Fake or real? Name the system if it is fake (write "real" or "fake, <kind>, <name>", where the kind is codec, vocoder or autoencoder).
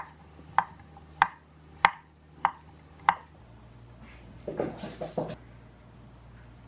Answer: real